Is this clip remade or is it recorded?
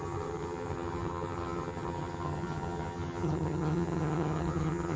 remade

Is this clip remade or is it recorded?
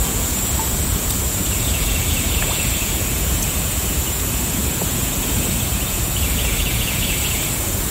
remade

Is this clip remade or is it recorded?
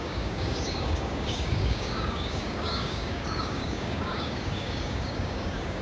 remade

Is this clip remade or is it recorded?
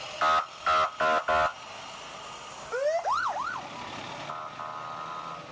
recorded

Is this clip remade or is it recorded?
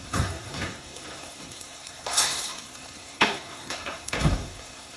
remade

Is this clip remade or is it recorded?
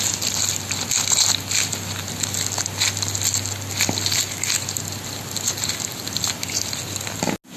recorded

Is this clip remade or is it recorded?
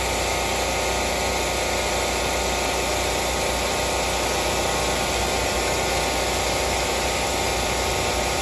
recorded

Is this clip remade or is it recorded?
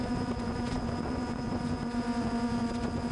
remade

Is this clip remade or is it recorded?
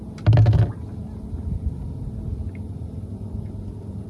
recorded